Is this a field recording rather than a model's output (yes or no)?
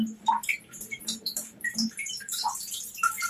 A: no